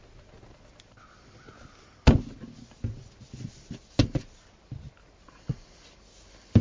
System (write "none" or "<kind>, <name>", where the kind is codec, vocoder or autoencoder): none